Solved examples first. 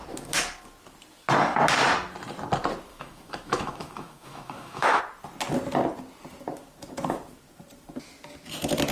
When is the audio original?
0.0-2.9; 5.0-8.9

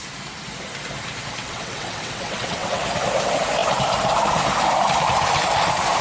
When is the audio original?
0.0-1.4; 2.8-6.0

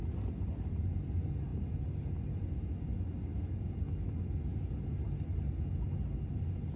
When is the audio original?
0.0-6.8